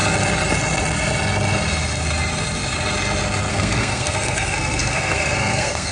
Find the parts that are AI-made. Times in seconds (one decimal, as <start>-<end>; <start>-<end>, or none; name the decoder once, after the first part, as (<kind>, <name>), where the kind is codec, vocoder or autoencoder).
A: 3.5-5.9 (codec, SNAC)